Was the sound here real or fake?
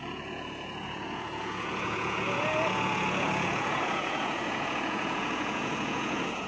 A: fake